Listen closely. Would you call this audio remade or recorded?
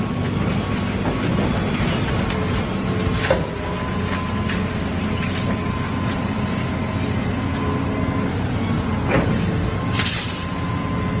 recorded